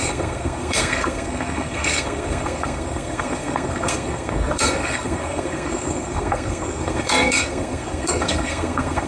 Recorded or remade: remade